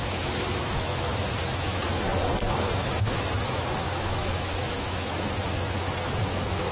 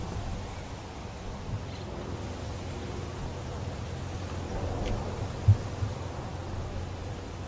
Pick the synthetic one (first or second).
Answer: first